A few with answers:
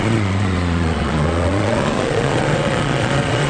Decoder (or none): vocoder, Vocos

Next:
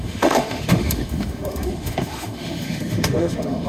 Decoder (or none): autoencoder, DAC-VAE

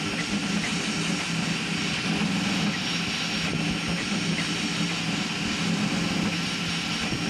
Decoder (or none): none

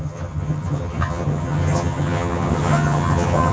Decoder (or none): vocoder, HiFi-GAN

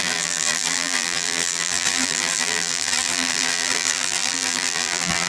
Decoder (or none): vocoder, BigVGAN v2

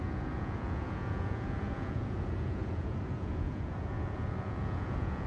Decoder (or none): vocoder, Vocos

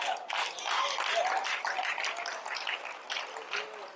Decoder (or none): none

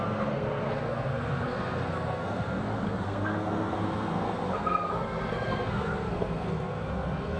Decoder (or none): codec, SNAC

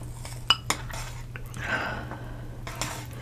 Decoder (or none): none